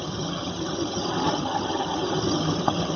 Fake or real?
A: fake